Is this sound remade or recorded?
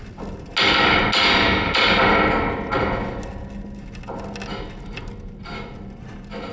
recorded